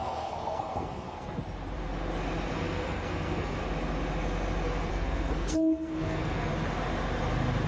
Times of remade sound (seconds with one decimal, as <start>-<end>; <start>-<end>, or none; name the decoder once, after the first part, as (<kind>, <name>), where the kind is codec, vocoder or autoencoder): 0.0-1.4 (codec, SNAC); 2.5-3.6; 4.9-6.5